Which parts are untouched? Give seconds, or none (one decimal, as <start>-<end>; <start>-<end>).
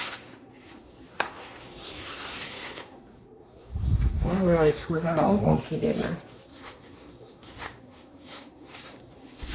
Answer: 5.6-6.3